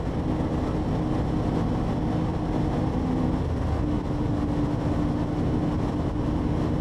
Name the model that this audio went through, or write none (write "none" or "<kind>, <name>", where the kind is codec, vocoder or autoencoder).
none